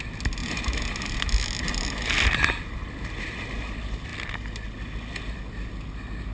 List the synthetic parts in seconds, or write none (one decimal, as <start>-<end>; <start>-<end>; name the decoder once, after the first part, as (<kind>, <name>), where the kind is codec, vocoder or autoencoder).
none